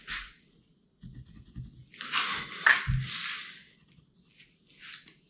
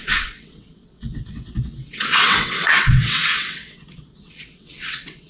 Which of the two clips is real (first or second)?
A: first